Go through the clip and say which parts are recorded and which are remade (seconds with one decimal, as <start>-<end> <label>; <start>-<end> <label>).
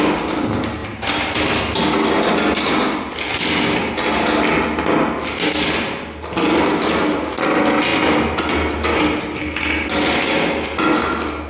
0.0-0.8 recorded; 0.8-1.4 remade; 1.4-11.5 recorded